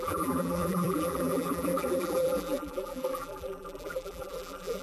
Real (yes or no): no